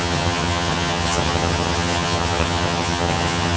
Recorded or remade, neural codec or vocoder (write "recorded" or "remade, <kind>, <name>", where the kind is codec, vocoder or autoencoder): remade, vocoder, HiFi-GAN